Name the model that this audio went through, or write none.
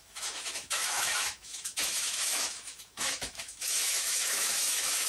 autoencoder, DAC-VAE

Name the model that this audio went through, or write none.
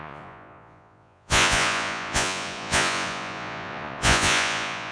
vocoder, Vocos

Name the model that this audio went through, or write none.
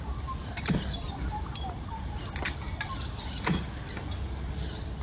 none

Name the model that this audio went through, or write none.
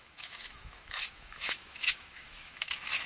autoencoder, DAC-VAE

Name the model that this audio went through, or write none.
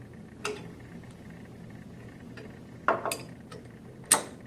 none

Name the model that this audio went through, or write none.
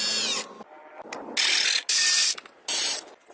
none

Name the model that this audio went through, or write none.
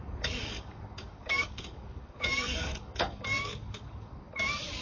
codec, DAC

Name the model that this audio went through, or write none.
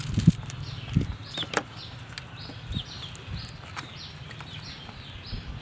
none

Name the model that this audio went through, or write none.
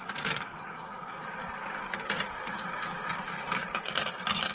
none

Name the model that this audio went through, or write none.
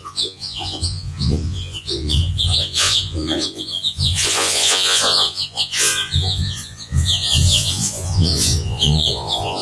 vocoder, Vocos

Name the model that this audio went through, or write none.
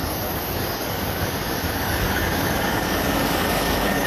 codec, DAC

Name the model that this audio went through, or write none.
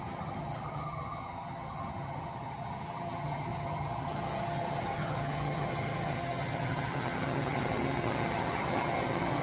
vocoder, HiFi-GAN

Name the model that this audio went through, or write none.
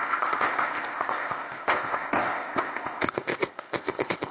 codec, ZipCodec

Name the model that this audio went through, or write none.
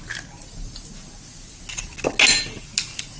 none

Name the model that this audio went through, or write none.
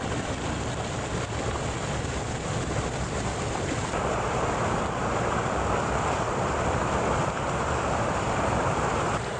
none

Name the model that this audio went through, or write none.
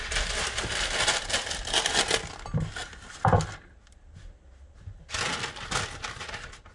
none